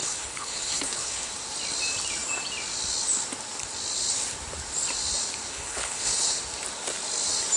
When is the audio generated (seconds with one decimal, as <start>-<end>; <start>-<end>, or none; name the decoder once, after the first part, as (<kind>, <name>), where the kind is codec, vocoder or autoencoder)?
0.0-1.3 (codec, HILCodec); 5.5-6.4